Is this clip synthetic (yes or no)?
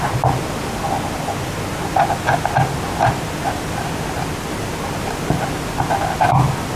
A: no